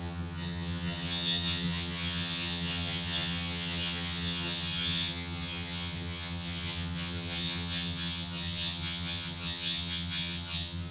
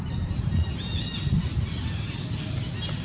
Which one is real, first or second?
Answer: second